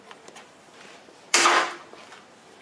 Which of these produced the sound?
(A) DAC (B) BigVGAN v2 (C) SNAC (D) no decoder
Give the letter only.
B